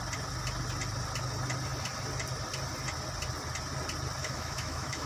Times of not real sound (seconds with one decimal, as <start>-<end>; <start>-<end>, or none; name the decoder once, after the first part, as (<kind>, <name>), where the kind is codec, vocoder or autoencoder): 4.2-5.1 (autoencoder, DAC-VAE)